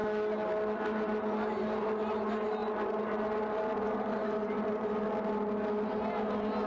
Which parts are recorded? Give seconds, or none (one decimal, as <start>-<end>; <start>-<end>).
0.0-6.7